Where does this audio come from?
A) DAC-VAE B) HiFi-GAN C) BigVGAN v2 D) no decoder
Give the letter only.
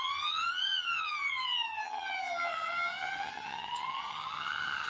B